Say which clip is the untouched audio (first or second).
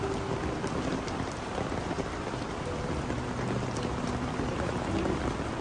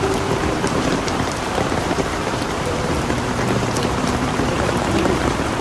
first